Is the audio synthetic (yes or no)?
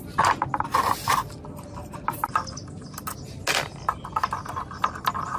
no